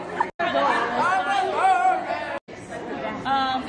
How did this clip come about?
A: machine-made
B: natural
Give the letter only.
B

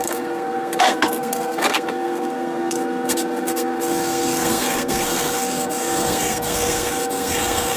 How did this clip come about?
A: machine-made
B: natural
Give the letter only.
A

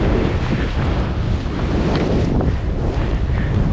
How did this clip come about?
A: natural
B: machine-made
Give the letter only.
A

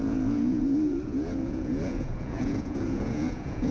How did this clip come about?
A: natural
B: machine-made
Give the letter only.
B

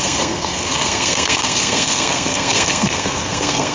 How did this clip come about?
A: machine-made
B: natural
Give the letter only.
A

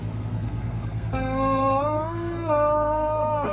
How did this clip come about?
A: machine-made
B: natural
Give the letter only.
A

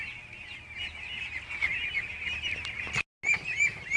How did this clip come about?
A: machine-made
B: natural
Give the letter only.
B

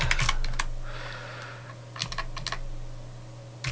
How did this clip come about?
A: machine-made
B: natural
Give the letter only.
B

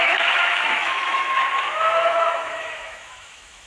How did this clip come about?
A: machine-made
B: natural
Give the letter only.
A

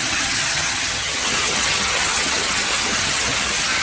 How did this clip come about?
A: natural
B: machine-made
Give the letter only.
B